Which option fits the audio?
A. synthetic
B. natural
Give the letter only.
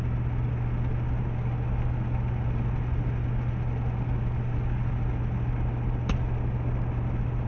B